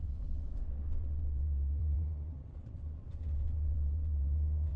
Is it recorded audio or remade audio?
remade